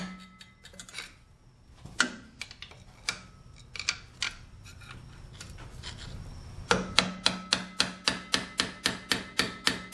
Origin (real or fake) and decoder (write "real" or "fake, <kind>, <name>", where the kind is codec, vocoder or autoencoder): real